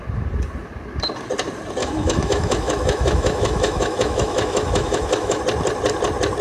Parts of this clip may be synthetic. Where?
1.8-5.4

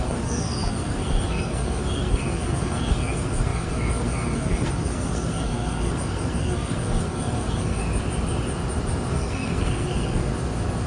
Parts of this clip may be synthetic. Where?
0.0-7.8; 9.1-10.3

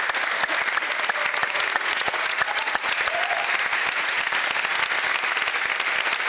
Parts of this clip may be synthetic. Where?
1.4-3.2; 3.7-4.2

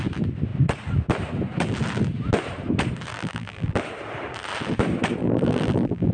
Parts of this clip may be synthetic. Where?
3.1-3.8; 5.2-6.1